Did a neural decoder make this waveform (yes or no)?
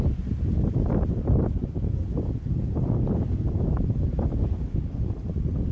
no